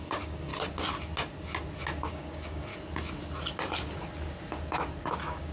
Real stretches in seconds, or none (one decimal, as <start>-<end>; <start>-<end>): 0.5-2.1; 2.7-5.0